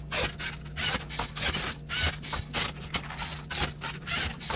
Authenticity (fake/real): real